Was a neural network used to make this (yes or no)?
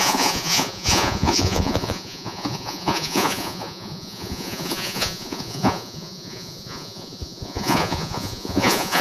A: yes